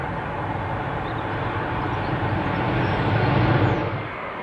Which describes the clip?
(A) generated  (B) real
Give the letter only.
B